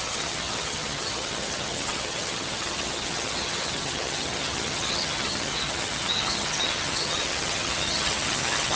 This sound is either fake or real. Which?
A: fake